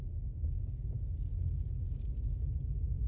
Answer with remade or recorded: recorded